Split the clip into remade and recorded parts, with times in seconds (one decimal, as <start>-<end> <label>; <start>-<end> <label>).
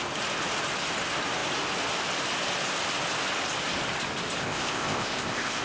0.0-4.4 recorded; 4.4-5.6 remade